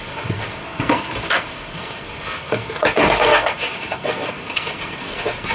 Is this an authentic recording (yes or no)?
no